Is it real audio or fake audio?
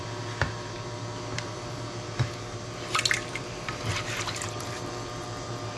fake